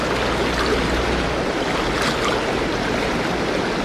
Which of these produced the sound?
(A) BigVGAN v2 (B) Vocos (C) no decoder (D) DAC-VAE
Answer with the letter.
C